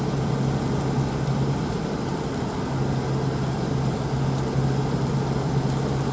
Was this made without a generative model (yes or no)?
yes